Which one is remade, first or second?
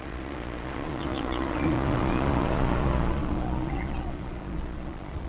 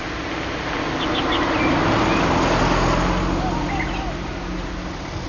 first